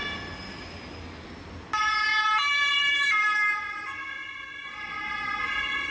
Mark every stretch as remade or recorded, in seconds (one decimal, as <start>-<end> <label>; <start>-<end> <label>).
0.0-5.9 recorded